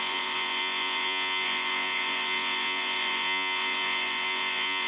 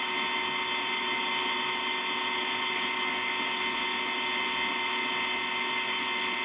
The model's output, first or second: first